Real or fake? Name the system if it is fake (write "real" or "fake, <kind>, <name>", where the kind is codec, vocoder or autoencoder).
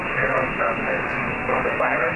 fake, codec, SNAC